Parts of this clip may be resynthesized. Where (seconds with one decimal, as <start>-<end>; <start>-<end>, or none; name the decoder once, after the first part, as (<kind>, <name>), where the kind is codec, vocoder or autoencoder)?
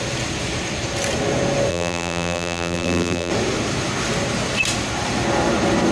1.7-3.3 (vocoder, BigVGAN v2)